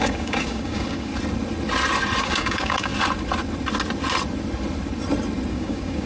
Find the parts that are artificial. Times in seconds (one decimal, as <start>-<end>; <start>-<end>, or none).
0.0-1.1; 2.2-2.9; 5.5-6.1